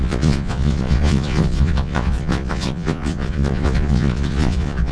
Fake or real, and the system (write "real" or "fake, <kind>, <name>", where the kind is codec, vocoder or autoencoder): fake, vocoder, Vocos